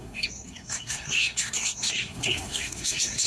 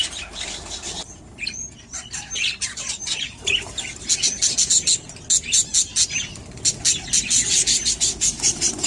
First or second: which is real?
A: second